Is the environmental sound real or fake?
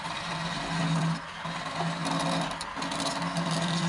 real